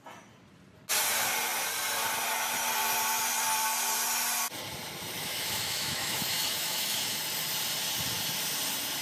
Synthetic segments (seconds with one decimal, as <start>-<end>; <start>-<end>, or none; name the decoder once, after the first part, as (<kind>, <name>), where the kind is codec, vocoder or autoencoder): 5.2-7.2 (autoencoder, DAC-VAE)